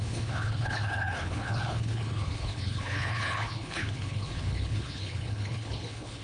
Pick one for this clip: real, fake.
fake